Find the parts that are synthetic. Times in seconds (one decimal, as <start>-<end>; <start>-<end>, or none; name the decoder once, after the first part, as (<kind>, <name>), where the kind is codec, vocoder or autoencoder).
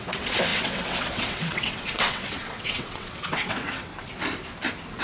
0.0-3.9 (vocoder, WaveNeXt)